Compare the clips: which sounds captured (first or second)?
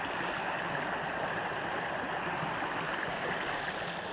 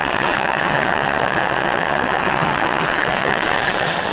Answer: first